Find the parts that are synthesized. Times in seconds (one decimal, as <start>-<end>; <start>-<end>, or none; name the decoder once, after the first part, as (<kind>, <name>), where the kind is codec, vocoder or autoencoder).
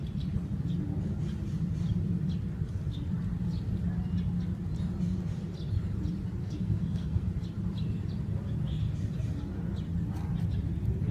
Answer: 6.4-7.3 (codec, SNAC)